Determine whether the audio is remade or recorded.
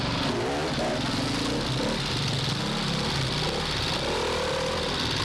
recorded